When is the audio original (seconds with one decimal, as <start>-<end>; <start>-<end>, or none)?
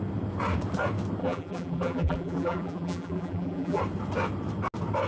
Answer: 0.0-1.2; 3.8-5.1